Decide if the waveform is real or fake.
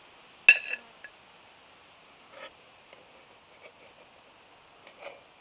real